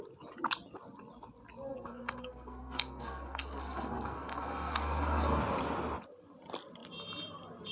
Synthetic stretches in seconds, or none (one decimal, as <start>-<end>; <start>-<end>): 1.7-5.4